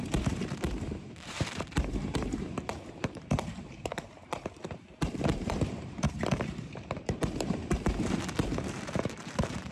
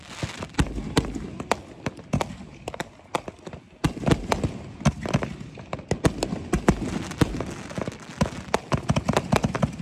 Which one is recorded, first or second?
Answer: second